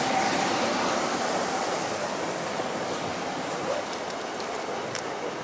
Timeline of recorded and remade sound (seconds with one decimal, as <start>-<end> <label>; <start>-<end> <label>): 0.0-3.1 recorded; 3.1-3.9 remade; 3.9-5.4 recorded